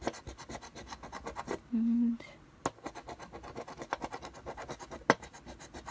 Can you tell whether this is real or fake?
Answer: real